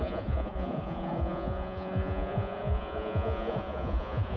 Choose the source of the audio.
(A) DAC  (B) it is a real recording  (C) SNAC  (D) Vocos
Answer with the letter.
D